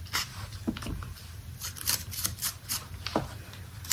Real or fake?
real